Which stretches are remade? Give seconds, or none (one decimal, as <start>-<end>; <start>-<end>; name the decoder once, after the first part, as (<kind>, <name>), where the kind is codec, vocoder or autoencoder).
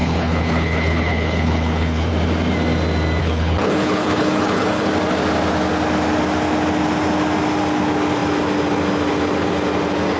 0.0-2.1 (codec, HILCodec); 3.2-4.9